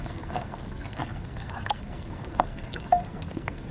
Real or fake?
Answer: fake